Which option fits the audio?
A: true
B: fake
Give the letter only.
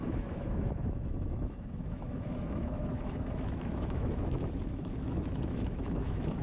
B